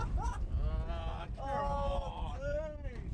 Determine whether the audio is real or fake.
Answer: real